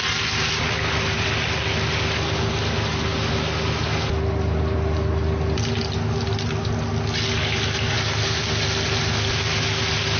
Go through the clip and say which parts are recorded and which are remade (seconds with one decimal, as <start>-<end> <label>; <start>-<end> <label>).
0.0-10.2 recorded